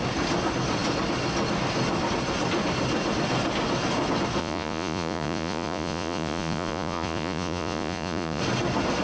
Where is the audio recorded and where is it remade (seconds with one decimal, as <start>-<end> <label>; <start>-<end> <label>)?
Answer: 0.0-4.4 recorded; 4.4-8.4 remade; 8.4-9.0 recorded